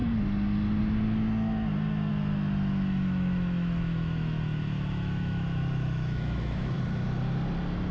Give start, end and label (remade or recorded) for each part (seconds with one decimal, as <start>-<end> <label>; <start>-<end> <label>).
0.0-2.1 recorded; 2.1-6.8 remade; 6.8-7.9 recorded